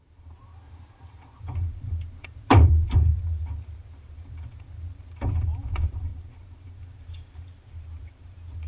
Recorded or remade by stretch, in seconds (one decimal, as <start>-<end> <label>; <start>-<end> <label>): 0.0-8.7 remade